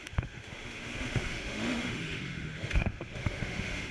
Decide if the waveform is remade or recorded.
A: remade